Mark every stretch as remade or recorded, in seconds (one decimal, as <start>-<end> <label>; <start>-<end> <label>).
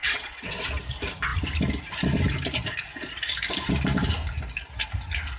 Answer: 0.0-0.7 remade; 0.7-5.4 recorded